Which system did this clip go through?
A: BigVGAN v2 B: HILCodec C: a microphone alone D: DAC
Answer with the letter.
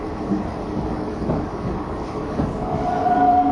D